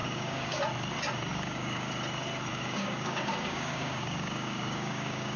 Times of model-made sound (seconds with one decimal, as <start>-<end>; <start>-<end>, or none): 0.0-0.6; 1.3-1.9; 2.5-5.4